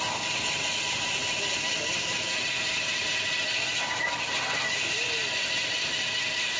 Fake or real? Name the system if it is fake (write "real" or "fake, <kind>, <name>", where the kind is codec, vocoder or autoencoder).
real